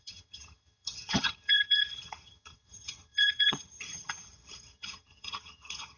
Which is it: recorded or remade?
remade